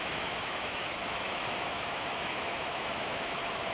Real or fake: fake